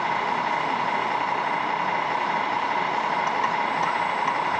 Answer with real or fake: real